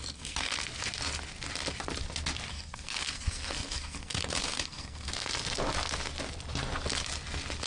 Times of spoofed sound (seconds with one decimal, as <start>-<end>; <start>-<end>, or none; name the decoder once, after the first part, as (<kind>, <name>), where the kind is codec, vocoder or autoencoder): 0.0-0.5 (codec, SNAC); 2.5-5.1